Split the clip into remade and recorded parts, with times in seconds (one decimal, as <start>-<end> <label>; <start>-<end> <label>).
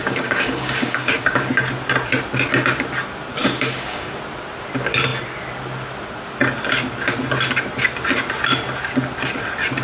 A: 0.0-1.5 remade; 1.5-3.4 recorded; 3.4-4.2 remade; 4.2-9.8 recorded